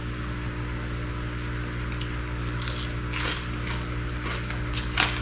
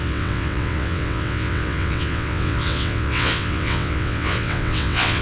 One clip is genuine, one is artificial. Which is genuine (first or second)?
first